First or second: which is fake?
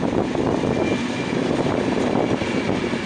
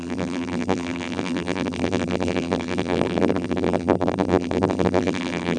second